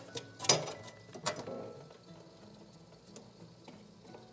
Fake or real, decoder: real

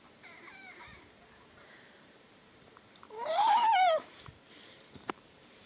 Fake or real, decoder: fake, vocoder, BigVGAN v2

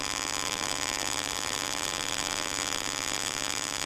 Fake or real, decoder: fake, vocoder, BigVGAN v2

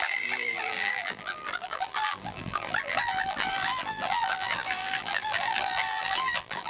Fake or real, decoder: fake, vocoder, BigVGAN v2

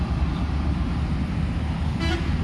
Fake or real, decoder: real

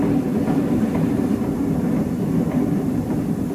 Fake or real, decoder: real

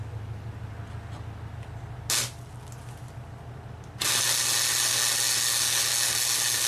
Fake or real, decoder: real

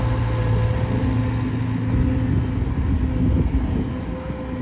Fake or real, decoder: real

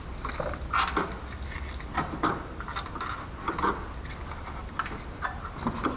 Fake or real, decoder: real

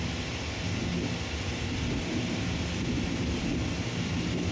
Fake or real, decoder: real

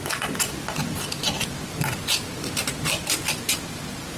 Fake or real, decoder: real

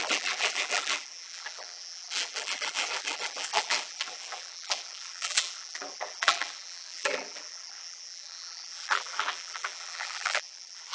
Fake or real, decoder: fake, vocoder, BigVGAN v2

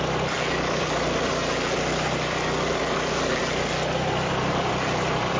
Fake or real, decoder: fake, vocoder, BigVGAN v2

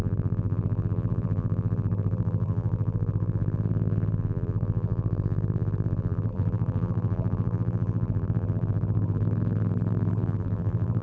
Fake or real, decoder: fake, vocoder, BigVGAN v2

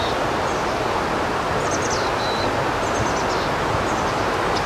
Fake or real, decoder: real